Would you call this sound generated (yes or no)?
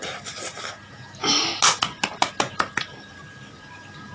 no